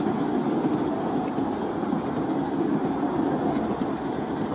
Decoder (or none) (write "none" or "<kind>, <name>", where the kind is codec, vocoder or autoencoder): none